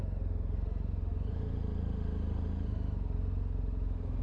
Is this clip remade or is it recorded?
recorded